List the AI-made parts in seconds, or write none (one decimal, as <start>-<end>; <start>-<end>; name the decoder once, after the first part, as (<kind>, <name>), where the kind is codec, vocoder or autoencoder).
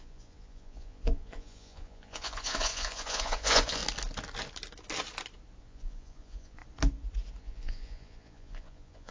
0.0-3.8 (vocoder, Vocos); 5.6-6.6; 7.4-9.1